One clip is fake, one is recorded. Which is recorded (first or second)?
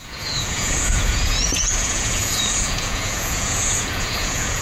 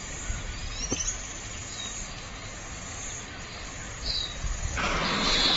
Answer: second